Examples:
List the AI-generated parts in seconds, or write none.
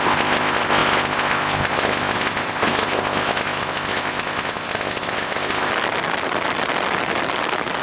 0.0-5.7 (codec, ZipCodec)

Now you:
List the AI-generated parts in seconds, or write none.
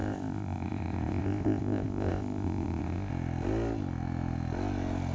0.0-3.1 (codec, ZipCodec)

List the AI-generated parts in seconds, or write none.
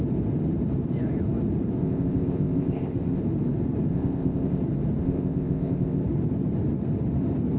1.8-3.2 (codec, ZipCodec); 3.9-4.6; 5.0-6.0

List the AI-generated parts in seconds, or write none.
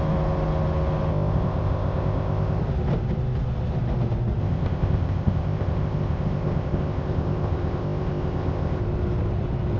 1.1-2.6 (codec, ZipCodec); 4.4-8.8